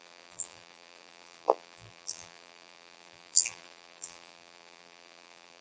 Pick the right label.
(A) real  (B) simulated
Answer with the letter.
B